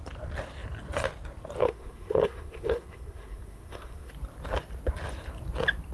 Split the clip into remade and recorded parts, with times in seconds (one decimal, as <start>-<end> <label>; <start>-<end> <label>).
0.0-1.6 recorded; 1.6-4.1 remade; 4.1-5.9 recorded